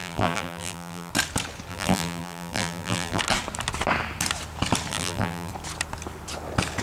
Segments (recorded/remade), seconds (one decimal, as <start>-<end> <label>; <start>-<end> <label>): 0.0-1.1 remade; 1.1-1.7 recorded; 1.7-3.2 remade; 3.2-4.9 recorded; 4.9-5.5 remade; 5.5-6.8 recorded